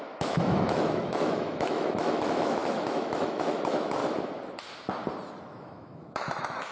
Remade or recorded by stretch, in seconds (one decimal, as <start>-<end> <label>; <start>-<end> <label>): 0.0-4.0 remade; 4.0-5.4 recorded; 5.4-6.7 remade